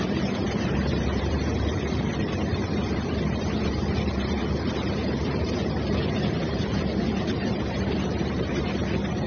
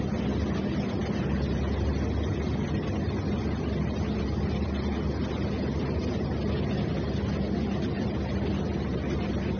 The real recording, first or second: second